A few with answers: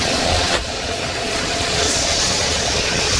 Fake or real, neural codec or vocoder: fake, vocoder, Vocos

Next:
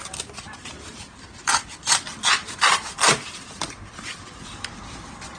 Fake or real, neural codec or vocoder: fake, vocoder, BigVGAN v2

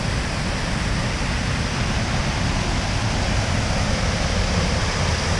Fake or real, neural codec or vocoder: real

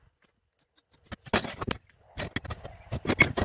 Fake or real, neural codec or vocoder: real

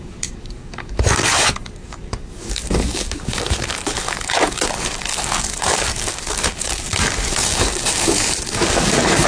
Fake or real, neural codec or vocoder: fake, codec, DAC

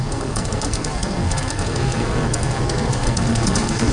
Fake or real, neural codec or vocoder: fake, codec, SNAC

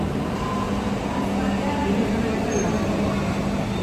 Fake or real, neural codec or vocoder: real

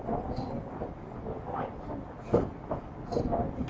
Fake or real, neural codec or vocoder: real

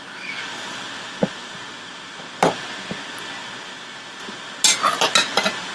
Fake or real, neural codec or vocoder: real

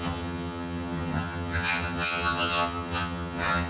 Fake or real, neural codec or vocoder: fake, vocoder, HiFi-GAN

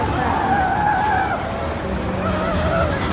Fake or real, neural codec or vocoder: real